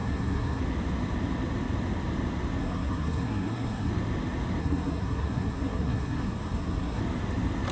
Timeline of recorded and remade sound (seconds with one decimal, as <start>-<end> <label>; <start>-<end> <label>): 0.0-0.6 remade; 0.6-2.6 recorded; 2.6-3.9 remade; 3.9-4.6 recorded; 4.6-7.0 remade; 7.0-7.7 recorded